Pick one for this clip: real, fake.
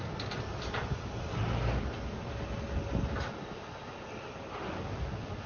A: real